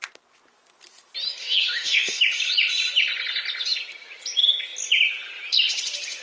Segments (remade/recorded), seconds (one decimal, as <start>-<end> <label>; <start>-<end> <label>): 0.0-1.4 recorded; 1.4-2.2 remade; 2.2-6.2 recorded